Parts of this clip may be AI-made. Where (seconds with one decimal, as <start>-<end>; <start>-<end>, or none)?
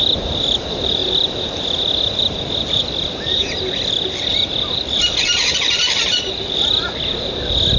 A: 0.0-1.0; 2.2-3.3; 4.5-7.8